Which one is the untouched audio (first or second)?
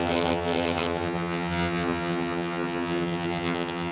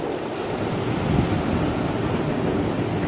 second